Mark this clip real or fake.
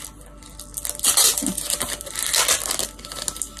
real